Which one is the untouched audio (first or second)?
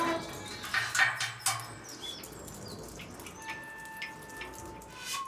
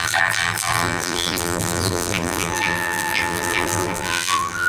first